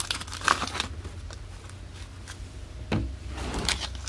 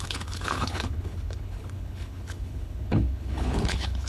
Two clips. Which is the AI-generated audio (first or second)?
second